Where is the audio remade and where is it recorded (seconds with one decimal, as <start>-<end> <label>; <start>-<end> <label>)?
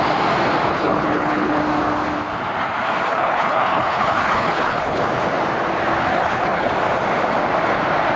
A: 0.0-0.7 recorded; 0.7-1.6 remade; 1.6-3.1 recorded; 3.1-5.0 remade; 5.0-6.1 recorded; 6.1-6.7 remade; 6.7-8.2 recorded